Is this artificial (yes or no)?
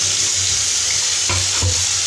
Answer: no